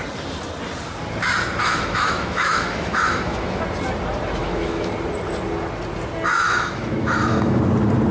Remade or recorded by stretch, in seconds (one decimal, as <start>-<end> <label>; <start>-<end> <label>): 0.0-1.6 recorded; 1.6-3.6 remade; 3.6-4.4 recorded; 4.4-4.9 remade; 4.9-6.4 recorded; 6.4-7.6 remade; 7.6-8.1 recorded